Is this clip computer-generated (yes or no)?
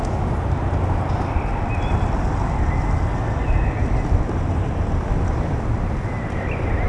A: no